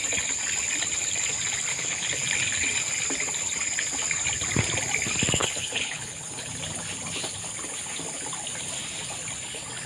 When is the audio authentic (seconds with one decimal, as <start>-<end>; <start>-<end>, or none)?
0.0-1.7; 2.2-5.4; 6.5-9.9